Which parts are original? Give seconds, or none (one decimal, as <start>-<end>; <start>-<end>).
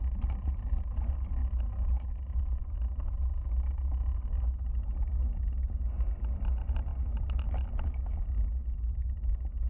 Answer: 0.0-9.7